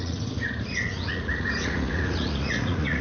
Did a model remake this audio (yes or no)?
yes